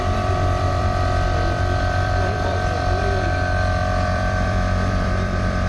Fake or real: fake